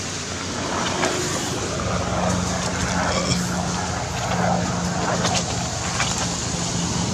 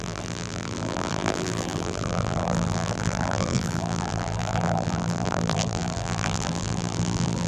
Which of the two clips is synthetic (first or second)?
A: second